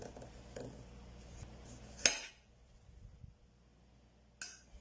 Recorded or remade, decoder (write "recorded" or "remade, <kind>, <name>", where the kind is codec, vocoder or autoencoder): recorded